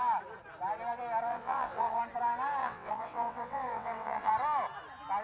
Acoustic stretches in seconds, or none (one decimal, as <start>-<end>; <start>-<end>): 0.0-1.3; 2.0-2.6; 4.3-5.2